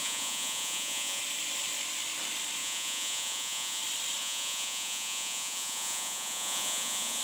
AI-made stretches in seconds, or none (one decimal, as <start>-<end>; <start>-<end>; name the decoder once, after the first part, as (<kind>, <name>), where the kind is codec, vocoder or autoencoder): 0.0-1.2 (vocoder, Vocos); 2.6-3.8; 4.2-7.2